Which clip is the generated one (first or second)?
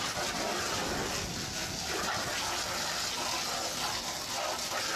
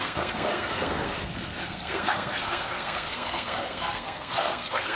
second